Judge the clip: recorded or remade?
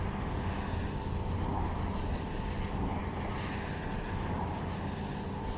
recorded